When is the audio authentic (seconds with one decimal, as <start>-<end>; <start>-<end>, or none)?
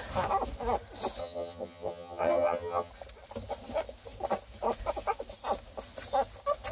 0.0-1.2; 2.9-6.7